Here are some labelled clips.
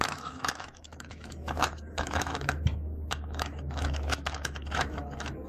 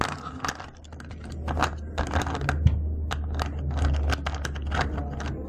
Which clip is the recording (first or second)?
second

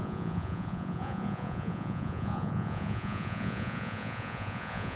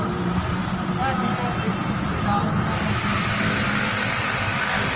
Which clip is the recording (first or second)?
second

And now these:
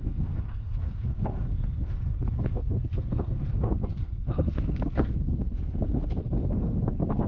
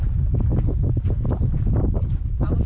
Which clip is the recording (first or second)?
second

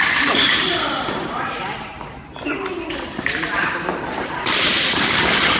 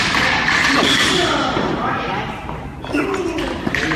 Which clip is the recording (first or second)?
second